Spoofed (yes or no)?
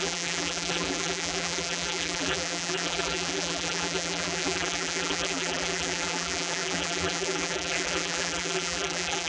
yes